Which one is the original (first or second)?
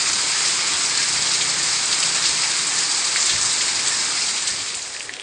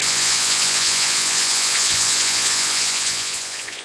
first